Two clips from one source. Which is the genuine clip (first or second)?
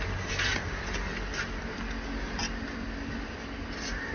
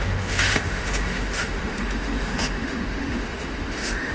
first